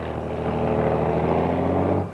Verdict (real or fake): real